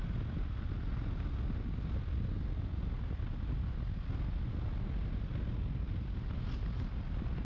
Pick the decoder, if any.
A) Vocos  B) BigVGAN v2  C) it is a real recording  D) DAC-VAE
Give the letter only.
C